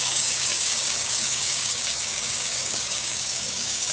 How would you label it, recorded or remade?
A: remade